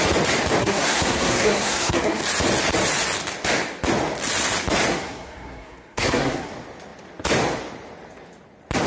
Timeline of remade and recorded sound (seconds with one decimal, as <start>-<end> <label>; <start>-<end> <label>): 0.0-0.6 recorded; 0.6-2.2 remade; 2.2-4.9 recorded; 4.9-6.5 remade; 6.5-8.9 recorded